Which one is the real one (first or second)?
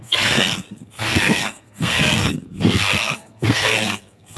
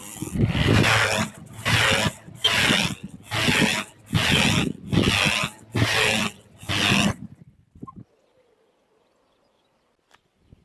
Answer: second